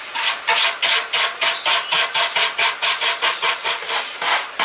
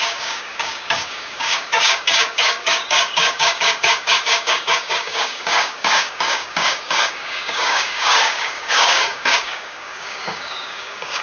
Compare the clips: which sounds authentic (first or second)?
first